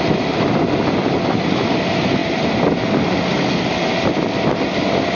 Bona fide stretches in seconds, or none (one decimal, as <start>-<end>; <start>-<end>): 0.0-5.1